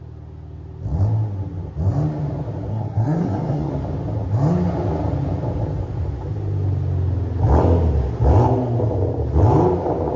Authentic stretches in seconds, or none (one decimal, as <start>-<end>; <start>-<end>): 0.0-2.7; 3.7-10.2